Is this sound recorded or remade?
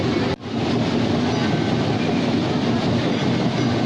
recorded